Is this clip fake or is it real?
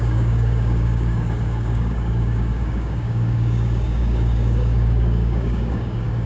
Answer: fake